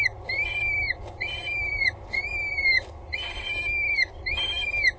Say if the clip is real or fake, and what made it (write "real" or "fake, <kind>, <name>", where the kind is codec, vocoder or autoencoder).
real